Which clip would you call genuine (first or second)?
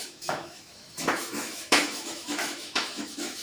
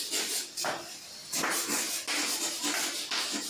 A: second